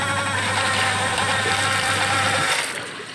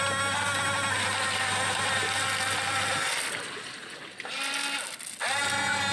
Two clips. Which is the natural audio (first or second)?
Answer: second